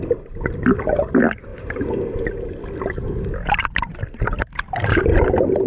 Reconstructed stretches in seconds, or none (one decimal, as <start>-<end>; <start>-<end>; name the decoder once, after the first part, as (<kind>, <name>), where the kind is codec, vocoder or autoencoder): none